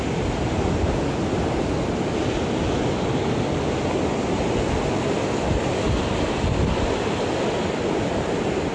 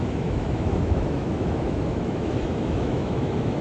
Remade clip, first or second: second